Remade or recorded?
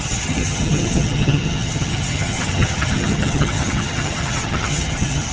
remade